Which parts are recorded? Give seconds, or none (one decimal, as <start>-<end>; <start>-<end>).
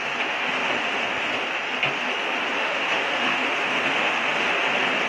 0.0-2.6; 4.5-5.1